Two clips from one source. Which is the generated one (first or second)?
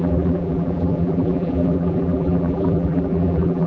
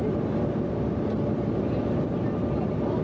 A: first